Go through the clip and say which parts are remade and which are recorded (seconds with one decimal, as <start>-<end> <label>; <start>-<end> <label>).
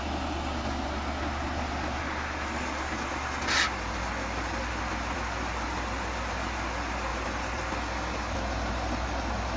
0.0-9.6 recorded